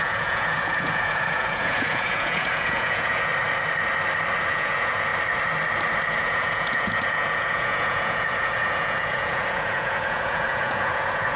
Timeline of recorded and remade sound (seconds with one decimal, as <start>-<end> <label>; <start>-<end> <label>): 0.0-3.3 remade; 3.3-4.5 recorded; 4.5-5.1 remade; 5.1-6.2 recorded; 6.2-11.4 remade